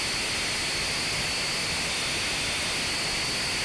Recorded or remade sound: recorded